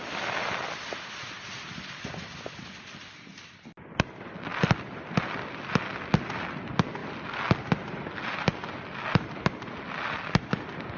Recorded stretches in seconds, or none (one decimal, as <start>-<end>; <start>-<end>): 0.0-11.0